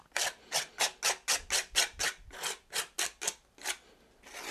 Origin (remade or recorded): recorded